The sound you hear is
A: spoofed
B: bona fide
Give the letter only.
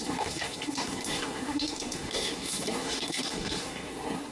A